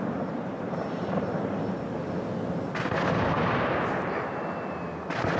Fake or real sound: real